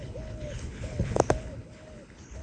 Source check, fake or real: fake